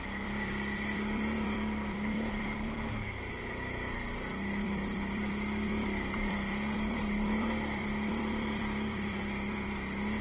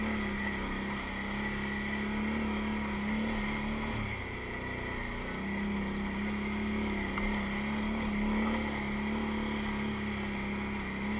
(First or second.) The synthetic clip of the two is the first